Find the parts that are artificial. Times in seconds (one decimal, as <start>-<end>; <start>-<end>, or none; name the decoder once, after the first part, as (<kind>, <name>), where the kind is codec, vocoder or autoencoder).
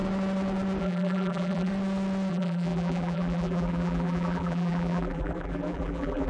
0.8-1.7 (vocoder, BigVGAN v2); 2.3-6.3